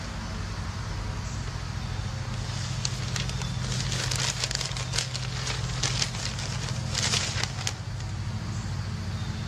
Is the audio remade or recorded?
recorded